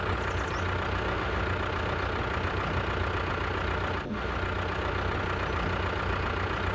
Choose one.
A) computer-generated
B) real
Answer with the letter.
B